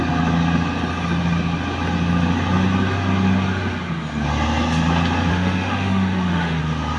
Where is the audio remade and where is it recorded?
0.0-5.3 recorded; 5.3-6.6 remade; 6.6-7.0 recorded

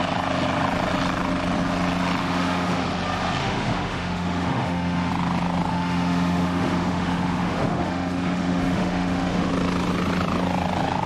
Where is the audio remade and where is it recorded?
0.0-2.2 recorded; 2.2-2.9 remade; 2.9-3.4 recorded; 3.4-5.1 remade; 5.1-5.7 recorded; 5.7-9.5 remade; 9.5-11.1 recorded

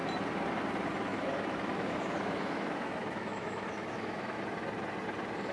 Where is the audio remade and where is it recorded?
0.0-1.1 recorded; 1.1-4.4 remade; 4.4-5.5 recorded